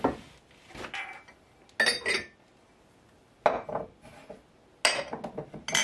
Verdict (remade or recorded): recorded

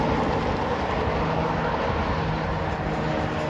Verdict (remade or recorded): recorded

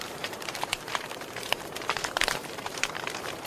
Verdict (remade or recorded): remade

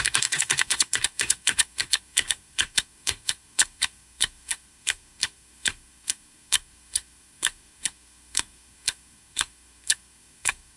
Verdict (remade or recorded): remade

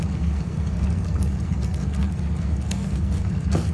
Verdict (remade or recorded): remade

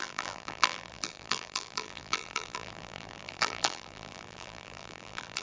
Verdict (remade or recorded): remade